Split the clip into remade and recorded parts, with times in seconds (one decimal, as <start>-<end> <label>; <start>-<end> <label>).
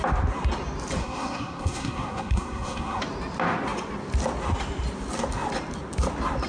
0.0-1.0 recorded; 1.0-3.0 remade; 3.0-6.5 recorded